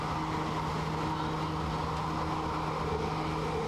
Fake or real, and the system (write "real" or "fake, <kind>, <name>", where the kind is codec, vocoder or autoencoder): real